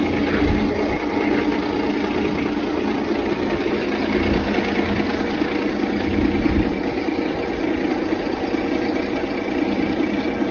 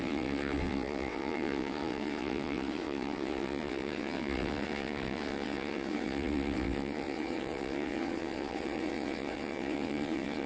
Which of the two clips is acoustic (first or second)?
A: first